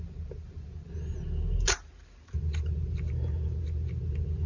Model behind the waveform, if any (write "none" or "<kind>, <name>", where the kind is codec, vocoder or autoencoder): none